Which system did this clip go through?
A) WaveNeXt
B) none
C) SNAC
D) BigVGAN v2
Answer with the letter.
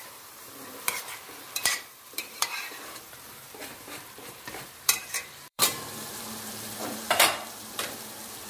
D